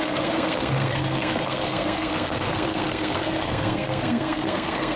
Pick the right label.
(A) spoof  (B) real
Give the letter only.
A